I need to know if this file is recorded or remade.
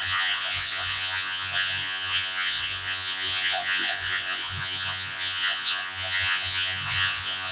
remade